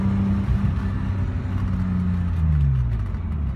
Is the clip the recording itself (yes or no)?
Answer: yes